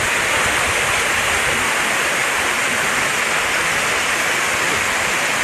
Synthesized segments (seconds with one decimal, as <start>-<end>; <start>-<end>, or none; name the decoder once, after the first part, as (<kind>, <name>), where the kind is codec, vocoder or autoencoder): none